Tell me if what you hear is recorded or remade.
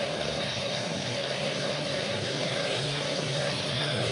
remade